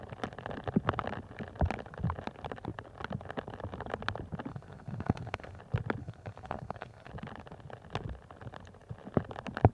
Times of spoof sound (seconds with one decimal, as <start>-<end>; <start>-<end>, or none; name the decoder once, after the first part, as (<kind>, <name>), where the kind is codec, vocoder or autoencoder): 4.5-5.6 (codec, SNAC); 6.0-7.1